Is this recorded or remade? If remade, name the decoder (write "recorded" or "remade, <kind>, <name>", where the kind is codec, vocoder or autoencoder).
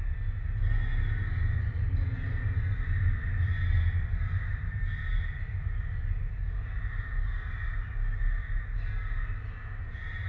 recorded